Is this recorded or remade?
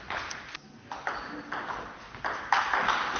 recorded